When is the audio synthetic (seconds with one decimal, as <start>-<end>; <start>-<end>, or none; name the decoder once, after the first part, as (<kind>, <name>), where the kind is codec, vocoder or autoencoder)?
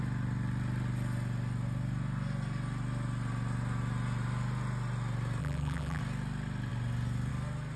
5.4-6.0 (vocoder, BigVGAN v2)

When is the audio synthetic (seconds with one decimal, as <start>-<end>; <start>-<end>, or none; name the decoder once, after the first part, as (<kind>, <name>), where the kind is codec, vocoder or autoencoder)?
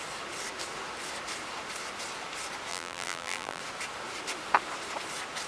2.7-3.6 (vocoder, BigVGAN v2)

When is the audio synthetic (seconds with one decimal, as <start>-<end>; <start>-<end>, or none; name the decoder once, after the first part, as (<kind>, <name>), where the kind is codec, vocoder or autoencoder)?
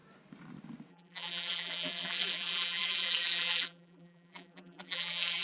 0.9-5.4 (vocoder, BigVGAN v2)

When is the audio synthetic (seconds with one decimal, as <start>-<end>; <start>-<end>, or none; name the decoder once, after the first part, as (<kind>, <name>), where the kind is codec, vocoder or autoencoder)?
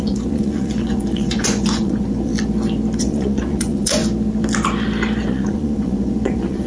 0.0-2.3 (vocoder, Vocos); 3.0-4.0; 5.3-6.7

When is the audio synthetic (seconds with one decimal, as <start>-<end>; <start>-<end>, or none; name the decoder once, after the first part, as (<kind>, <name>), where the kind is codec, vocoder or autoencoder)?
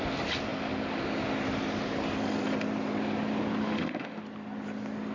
3.6-4.2 (autoencoder, DAC-VAE)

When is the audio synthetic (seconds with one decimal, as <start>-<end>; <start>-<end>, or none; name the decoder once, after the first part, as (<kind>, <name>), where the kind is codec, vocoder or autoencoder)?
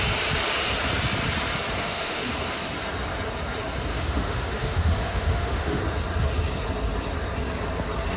1.8-2.3 (autoencoder, DAC-VAE); 3.9-5.8